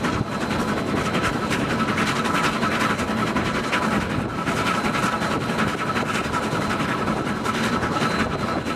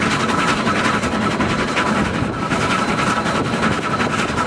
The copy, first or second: second